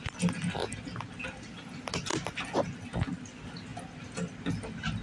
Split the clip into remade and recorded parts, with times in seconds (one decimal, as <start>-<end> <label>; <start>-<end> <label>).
0.0-5.0 recorded